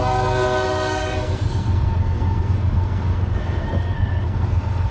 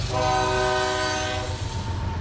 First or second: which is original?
second